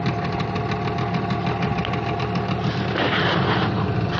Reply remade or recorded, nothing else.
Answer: recorded